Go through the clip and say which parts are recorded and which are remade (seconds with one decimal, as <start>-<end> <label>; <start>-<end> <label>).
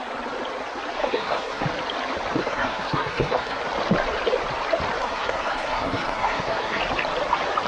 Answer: 0.0-1.0 recorded; 1.0-1.6 remade; 1.6-2.4 recorded; 2.4-3.6 remade; 3.6-5.0 recorded; 5.0-6.8 remade; 6.8-7.7 recorded